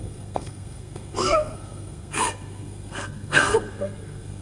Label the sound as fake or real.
fake